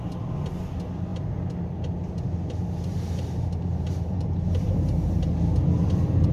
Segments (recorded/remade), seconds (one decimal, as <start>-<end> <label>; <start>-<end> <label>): 0.0-2.9 recorded; 2.9-5.3 remade; 5.3-6.3 recorded